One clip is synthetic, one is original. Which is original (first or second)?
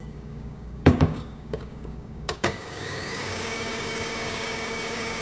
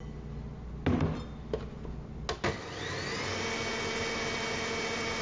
second